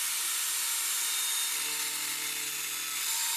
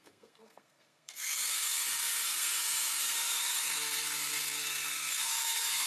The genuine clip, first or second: first